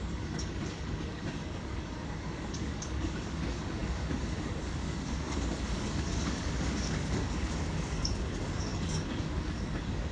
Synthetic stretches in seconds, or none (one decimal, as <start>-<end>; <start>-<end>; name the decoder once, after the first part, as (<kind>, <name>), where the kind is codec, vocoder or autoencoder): 0.0-10.1 (codec, DAC)